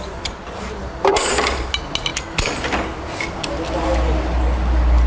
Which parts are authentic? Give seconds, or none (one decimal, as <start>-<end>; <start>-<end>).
0.0-5.1